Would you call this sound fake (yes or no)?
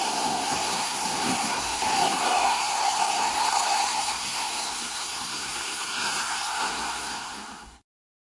yes